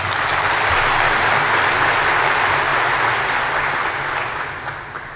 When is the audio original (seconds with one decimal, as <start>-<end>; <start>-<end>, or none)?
0.0-2.7; 3.3-5.2